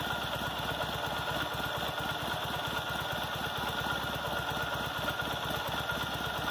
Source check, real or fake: real